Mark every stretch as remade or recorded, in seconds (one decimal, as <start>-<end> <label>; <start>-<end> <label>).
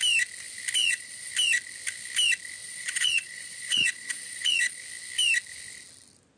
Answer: 0.0-0.8 recorded; 0.8-1.3 remade; 1.3-2.6 recorded; 2.6-4.8 remade; 4.8-6.4 recorded